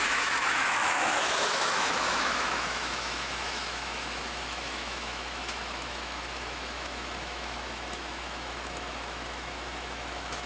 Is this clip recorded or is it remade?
remade